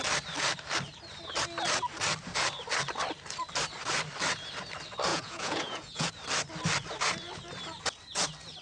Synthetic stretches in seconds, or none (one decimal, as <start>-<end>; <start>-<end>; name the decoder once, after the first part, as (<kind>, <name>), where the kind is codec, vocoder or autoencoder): 5.1-6.1 (vocoder, Vocos)